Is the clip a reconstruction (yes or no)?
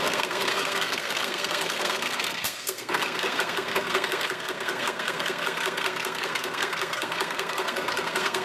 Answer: yes